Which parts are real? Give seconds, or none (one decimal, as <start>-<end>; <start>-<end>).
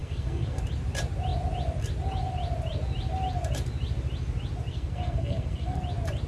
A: 0.6-4.7; 5.8-6.3